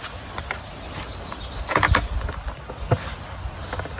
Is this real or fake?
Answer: real